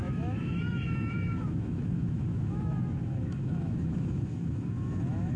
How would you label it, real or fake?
fake